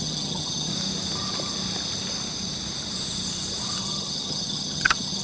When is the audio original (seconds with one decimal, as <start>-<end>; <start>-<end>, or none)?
0.7-3.8

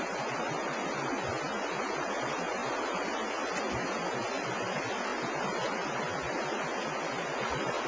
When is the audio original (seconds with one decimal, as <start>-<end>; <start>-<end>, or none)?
0.0-7.9